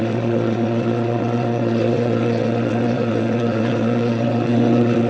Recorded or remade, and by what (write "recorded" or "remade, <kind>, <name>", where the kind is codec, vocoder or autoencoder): remade, vocoder, WaveNeXt